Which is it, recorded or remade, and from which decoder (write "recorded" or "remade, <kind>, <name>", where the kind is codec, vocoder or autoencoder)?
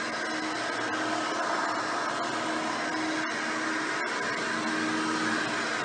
recorded